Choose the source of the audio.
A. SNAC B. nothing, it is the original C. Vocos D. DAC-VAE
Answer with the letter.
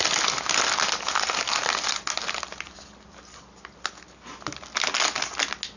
B